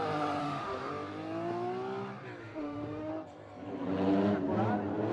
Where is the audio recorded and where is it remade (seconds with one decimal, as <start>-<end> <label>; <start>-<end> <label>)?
0.0-0.4 recorded; 0.4-0.9 remade; 0.9-2.4 recorded; 2.4-3.1 remade; 3.1-5.1 recorded